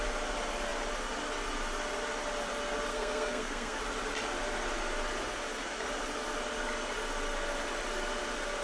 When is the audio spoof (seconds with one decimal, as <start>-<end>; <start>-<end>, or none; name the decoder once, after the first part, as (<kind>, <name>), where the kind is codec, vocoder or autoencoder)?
2.9-3.8 (codec, SNAC)